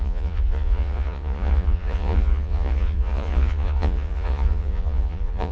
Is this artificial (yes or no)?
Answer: yes